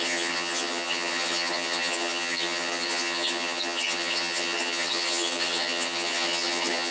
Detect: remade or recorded remade